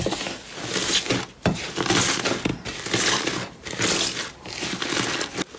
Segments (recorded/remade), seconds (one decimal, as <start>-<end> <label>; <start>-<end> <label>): 0.0-5.6 recorded